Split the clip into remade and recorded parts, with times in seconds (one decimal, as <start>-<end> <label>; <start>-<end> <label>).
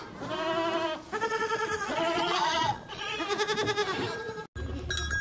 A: 0.0-1.3 recorded; 1.3-3.2 remade; 3.2-5.2 recorded